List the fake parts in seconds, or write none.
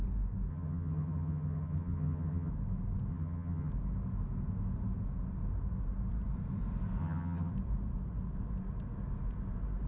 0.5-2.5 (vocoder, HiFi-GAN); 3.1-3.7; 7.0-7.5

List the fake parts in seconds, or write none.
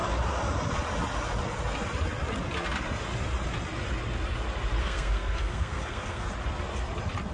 4.8-6.3 (codec, SNAC)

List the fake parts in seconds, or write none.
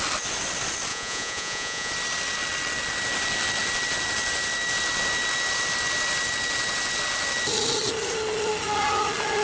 0.9-1.9 (vocoder, Vocos)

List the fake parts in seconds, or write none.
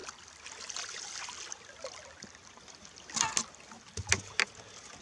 none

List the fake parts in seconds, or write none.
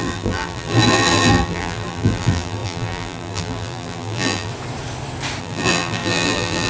0.0-4.5 (vocoder, BigVGAN v2); 5.4-6.7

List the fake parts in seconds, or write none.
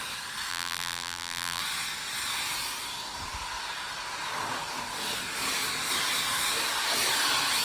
0.5-1.6 (vocoder, BigVGAN v2)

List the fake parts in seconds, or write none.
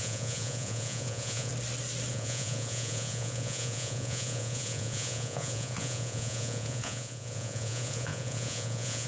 0.0-1.5 (vocoder, Vocos); 2.1-9.1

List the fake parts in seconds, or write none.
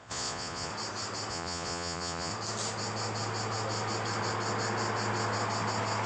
0.0-0.7 (vocoder, Vocos); 1.3-2.3